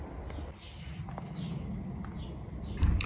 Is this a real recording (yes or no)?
yes